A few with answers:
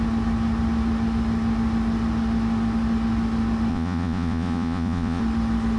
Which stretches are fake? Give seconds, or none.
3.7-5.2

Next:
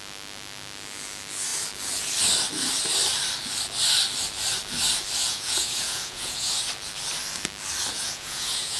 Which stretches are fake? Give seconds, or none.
5.2-6.7; 7.9-8.8